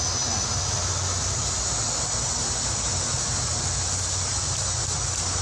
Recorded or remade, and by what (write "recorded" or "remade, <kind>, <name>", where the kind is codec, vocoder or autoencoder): recorded